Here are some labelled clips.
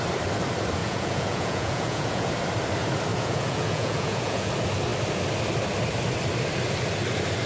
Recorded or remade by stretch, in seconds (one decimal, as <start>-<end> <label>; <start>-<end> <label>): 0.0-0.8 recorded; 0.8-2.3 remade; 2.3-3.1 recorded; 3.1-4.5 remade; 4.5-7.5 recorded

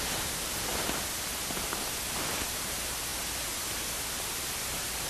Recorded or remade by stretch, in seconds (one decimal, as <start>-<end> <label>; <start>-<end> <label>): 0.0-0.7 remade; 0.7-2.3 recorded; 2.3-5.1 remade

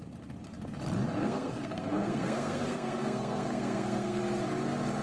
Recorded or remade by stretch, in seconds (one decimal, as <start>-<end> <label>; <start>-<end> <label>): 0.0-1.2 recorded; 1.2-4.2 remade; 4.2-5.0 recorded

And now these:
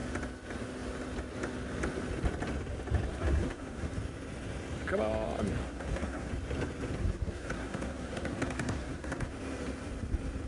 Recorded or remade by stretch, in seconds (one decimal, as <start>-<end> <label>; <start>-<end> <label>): 0.0-3.1 recorded; 3.1-3.9 remade; 3.9-5.6 recorded; 5.6-6.3 remade; 6.3-7.0 recorded; 7.0-9.3 remade; 9.3-10.5 recorded

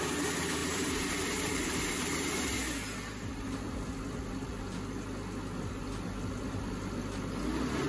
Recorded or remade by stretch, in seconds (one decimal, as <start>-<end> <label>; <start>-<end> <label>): 0.0-0.6 recorded; 0.6-1.8 remade; 1.8-7.9 recorded

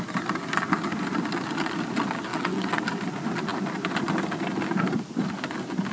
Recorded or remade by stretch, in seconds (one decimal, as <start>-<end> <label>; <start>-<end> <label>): 0.0-2.3 recorded; 2.3-2.8 remade; 2.8-5.9 recorded

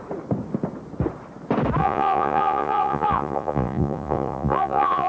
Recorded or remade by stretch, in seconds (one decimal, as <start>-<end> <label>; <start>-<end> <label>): 0.0-1.8 recorded; 1.8-5.1 remade

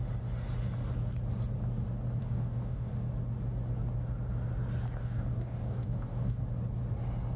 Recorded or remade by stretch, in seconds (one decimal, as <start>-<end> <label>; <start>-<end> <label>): 0.0-2.2 recorded; 2.2-2.9 remade; 2.9-5.0 recorded; 5.0-6.4 remade; 6.4-7.4 recorded